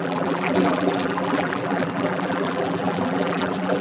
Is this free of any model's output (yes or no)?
no